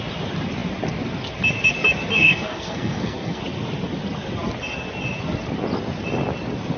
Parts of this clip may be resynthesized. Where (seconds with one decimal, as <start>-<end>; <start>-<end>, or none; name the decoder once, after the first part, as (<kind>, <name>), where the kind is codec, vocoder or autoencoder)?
2.1-3.4 (codec, SNAC)